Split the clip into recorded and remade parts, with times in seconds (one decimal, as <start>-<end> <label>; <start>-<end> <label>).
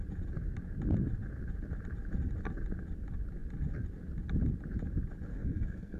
0.0-5.3 recorded; 5.3-6.0 remade